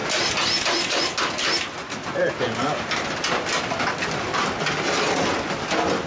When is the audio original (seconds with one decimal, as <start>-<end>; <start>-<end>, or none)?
0.0-6.1